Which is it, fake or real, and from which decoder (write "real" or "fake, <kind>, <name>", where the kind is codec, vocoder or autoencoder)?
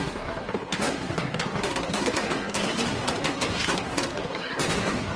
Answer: fake, codec, SNAC